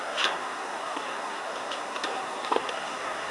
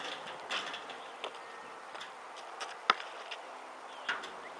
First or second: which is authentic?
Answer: second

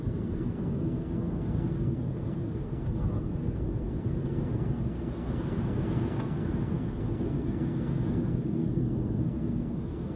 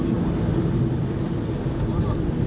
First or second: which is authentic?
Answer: second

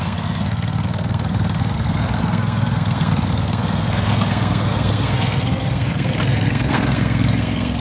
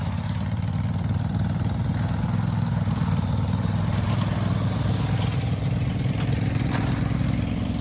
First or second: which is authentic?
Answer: second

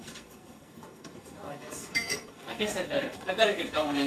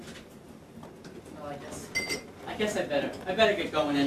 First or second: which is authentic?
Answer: second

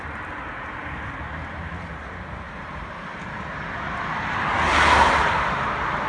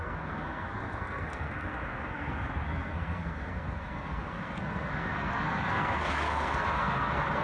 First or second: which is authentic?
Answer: first